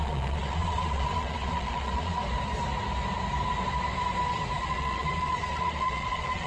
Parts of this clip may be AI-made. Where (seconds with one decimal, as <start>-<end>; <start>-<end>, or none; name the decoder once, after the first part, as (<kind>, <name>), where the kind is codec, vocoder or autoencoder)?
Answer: 0.0-2.2 (vocoder, Vocos); 4.6-6.5